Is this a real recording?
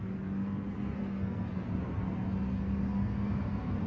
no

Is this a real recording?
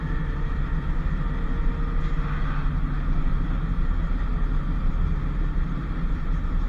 yes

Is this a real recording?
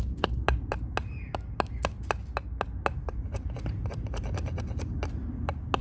yes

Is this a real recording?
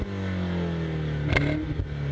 yes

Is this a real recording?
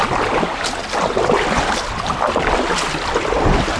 yes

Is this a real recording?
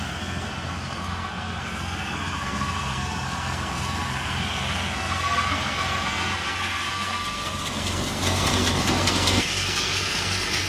no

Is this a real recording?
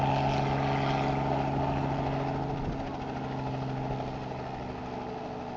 yes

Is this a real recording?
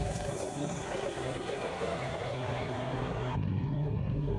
no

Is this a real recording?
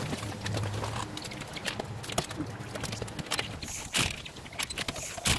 yes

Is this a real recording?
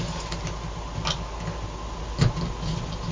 yes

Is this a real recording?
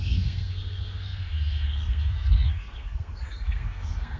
no